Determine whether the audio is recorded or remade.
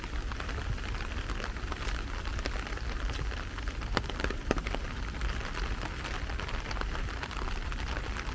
recorded